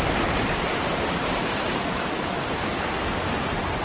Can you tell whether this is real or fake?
fake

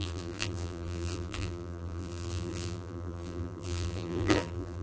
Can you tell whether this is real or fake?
fake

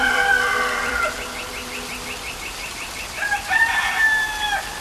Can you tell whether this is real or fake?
fake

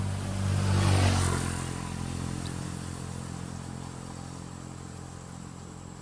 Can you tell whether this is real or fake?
real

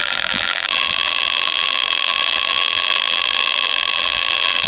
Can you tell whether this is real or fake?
fake